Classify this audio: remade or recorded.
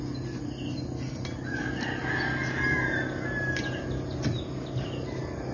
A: recorded